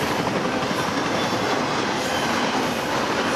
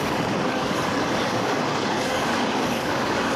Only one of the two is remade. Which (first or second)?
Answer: second